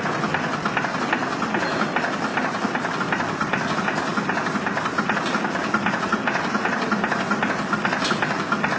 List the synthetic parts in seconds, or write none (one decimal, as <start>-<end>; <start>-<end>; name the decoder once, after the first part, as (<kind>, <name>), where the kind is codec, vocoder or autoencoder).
2.3-3.0 (vocoder, BigVGAN v2); 4.1-5.4